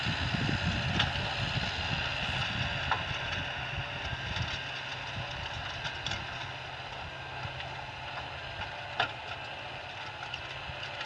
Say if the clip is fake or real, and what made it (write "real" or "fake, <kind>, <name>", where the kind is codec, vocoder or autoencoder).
real